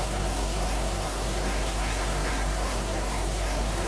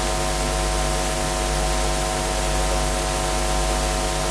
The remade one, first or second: first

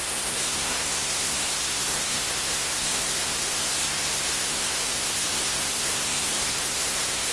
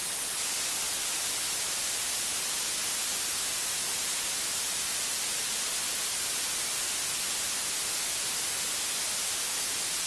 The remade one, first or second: first